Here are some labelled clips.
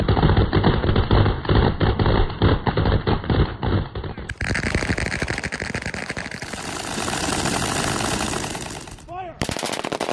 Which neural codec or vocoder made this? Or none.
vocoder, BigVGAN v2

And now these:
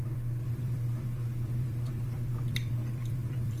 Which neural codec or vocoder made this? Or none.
vocoder, BigVGAN v2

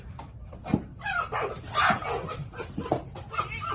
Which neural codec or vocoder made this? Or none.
none